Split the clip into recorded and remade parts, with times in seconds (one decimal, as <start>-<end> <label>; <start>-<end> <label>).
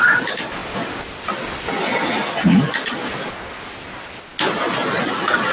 0.0-5.5 recorded